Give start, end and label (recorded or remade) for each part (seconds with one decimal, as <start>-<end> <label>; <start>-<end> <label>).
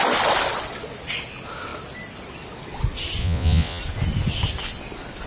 0.0-3.2 recorded; 3.2-3.8 remade; 3.8-5.3 recorded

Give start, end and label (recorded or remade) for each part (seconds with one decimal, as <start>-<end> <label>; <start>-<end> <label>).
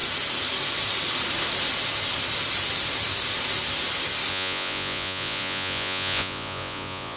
0.0-4.3 recorded; 4.3-7.2 remade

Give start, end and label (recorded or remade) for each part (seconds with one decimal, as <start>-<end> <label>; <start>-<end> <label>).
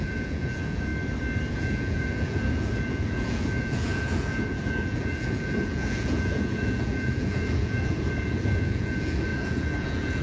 0.0-0.9 remade; 0.9-1.5 recorded; 1.5-10.2 remade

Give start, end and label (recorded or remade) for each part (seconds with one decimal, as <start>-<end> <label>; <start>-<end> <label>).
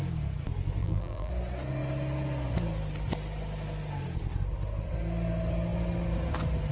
0.0-0.8 recorded; 0.8-1.3 remade; 1.3-6.7 recorded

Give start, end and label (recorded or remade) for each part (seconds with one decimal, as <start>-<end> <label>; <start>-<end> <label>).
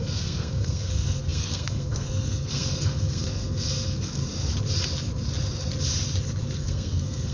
0.0-4.2 remade; 4.2-6.5 recorded; 6.5-7.3 remade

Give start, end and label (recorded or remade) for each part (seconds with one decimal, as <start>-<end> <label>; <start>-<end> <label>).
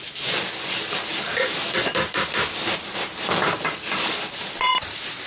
0.0-5.3 remade